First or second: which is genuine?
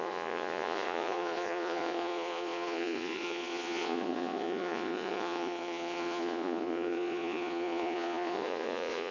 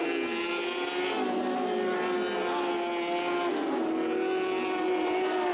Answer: second